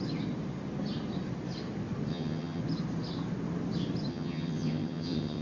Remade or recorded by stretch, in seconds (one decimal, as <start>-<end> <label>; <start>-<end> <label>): 0.0-2.1 recorded; 2.1-2.6 remade; 2.6-4.1 recorded; 4.1-5.4 remade